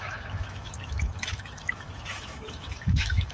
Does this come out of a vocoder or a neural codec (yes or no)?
yes